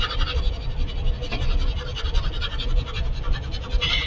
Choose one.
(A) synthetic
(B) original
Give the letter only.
B